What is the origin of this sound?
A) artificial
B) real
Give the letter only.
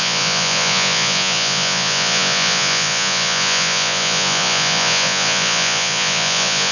A